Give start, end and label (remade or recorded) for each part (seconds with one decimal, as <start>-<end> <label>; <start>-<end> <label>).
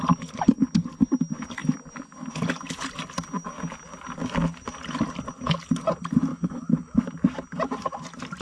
0.0-6.3 recorded; 6.3-7.0 remade; 7.0-8.4 recorded